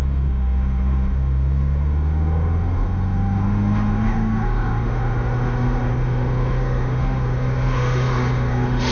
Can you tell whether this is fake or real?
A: fake